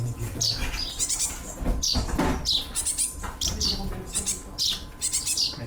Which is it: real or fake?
fake